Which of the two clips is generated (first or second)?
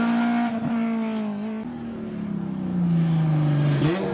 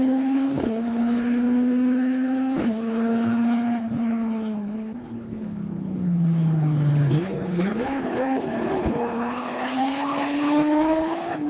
second